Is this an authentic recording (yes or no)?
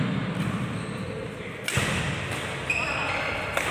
yes